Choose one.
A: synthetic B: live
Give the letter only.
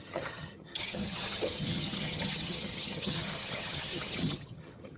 A